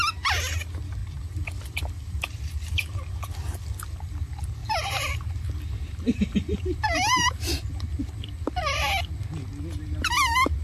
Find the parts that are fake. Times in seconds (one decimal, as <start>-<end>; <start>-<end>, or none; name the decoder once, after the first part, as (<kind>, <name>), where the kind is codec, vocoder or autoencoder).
4.6-7.3 (vocoder, BigVGAN v2)